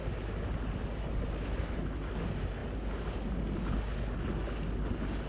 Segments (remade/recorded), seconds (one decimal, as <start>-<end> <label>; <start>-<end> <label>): 0.0-5.3 recorded